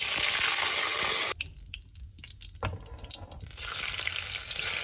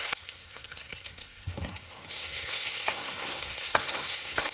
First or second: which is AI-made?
second